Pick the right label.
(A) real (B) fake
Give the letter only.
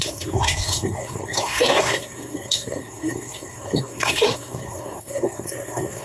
B